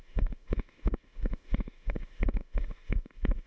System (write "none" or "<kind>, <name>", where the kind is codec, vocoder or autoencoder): autoencoder, DAC-VAE